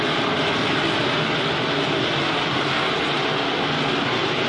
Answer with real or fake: real